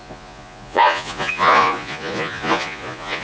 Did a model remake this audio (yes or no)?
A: yes